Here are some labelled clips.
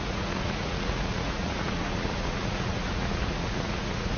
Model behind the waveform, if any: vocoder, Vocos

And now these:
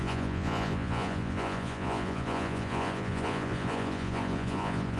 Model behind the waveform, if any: vocoder, Vocos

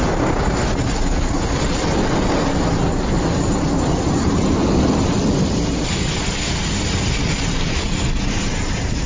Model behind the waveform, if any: none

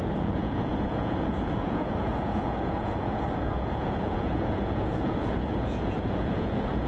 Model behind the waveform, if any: vocoder, Vocos